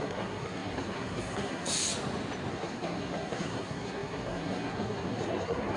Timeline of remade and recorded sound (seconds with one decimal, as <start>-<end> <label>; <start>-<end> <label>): 0.0-1.7 remade; 1.7-2.5 recorded; 2.5-5.8 remade